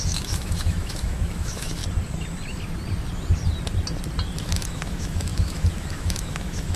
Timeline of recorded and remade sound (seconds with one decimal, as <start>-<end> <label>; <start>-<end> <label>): 0.0-1.8 remade; 1.8-4.4 recorded; 4.4-6.8 remade